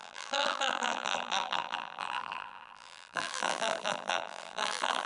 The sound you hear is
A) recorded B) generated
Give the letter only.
B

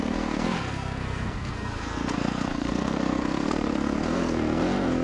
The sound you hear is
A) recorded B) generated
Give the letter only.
B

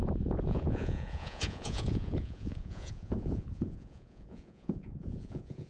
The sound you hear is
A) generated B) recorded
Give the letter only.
A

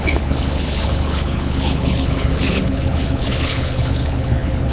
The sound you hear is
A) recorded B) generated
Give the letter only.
B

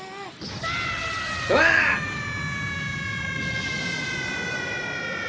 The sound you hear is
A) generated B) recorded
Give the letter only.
B